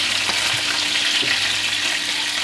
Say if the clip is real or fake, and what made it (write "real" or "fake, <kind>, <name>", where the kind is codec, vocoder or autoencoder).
real